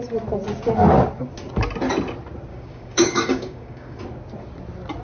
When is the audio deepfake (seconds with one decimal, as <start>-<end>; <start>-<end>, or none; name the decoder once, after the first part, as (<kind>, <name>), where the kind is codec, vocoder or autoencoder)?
2.5-4.0 (codec, DAC)